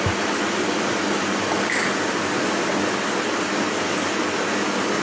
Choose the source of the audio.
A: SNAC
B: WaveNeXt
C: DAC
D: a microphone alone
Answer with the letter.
D